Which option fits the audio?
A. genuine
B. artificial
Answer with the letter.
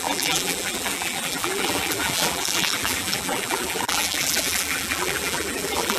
B